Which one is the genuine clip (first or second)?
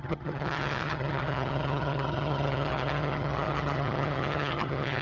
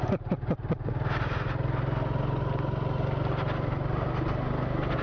second